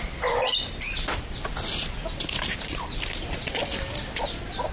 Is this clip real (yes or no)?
yes